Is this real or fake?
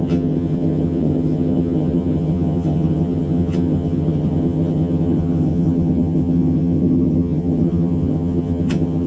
fake